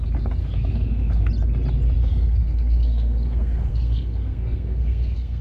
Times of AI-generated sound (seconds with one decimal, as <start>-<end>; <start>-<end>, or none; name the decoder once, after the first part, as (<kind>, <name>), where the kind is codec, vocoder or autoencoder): 0.4-1.3 (codec, SNAC); 2.0-5.4